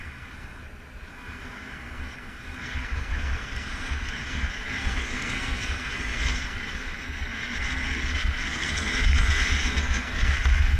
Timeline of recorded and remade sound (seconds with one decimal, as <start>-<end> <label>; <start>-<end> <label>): 0.0-0.6 remade; 0.6-1.1 recorded; 1.1-10.8 remade